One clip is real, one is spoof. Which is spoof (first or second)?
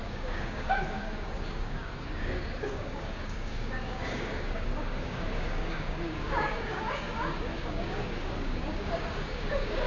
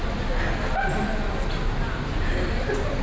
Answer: first